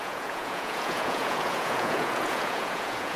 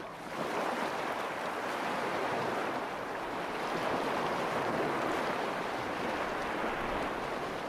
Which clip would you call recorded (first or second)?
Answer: second